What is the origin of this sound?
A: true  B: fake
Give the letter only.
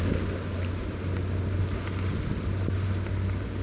A